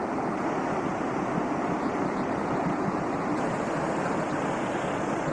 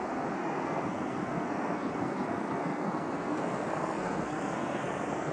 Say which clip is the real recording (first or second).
first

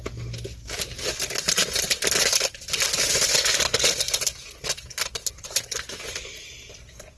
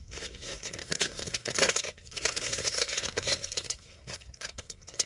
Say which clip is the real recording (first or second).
first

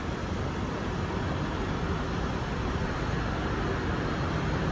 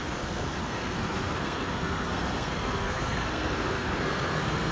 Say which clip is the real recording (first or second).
first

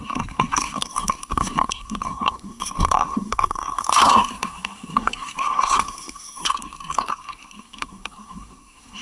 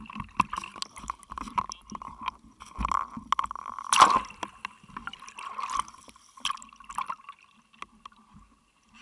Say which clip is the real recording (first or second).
second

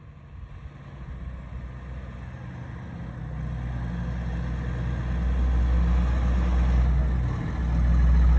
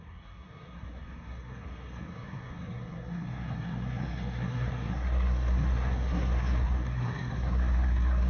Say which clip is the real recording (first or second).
first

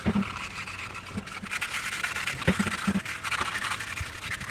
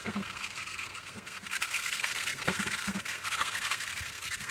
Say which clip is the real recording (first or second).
first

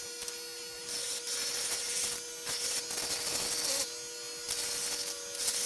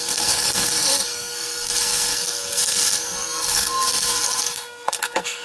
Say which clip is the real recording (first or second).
first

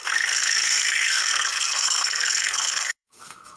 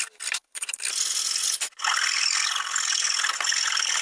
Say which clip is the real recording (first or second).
second